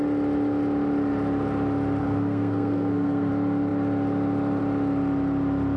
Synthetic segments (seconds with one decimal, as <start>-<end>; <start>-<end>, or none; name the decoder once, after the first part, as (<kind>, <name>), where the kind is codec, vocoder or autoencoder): 2.0-3.3 (codec, SNAC)